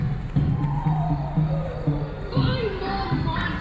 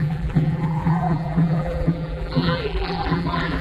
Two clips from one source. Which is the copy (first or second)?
second